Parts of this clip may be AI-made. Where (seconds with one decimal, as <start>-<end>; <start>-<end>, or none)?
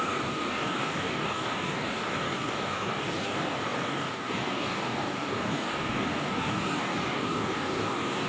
0.0-8.3